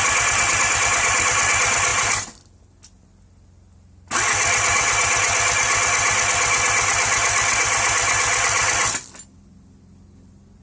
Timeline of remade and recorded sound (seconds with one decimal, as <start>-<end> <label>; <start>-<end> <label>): 0.0-10.6 recorded